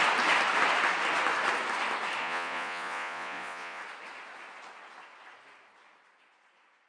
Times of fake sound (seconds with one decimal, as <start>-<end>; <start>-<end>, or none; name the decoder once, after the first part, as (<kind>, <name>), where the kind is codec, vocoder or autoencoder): 2.2-3.8 (vocoder, Vocos)

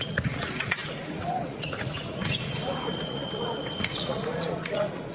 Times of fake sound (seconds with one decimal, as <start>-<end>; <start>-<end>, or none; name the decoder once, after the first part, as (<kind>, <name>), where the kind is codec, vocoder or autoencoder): 0.0-5.1 (vocoder, Vocos)

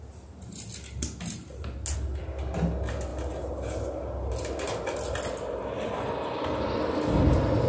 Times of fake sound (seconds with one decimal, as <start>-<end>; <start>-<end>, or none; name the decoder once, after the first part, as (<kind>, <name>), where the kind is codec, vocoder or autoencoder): none

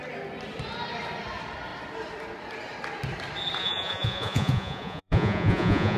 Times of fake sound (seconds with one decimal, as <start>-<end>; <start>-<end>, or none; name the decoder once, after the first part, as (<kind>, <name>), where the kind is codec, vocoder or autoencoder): 3.6-6.0 (vocoder, Vocos)